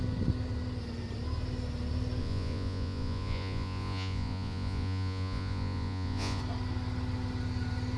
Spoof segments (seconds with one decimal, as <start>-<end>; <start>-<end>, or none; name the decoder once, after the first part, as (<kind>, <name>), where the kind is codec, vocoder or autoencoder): 2.2-6.4 (vocoder, Vocos)